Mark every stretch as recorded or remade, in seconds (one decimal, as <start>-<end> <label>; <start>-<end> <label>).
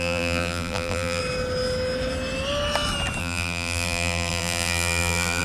0.0-1.2 remade; 1.2-3.2 recorded; 3.2-5.4 remade